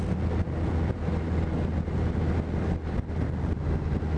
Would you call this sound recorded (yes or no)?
yes